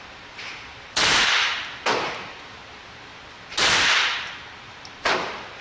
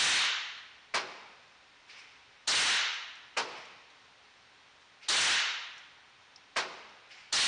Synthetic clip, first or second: first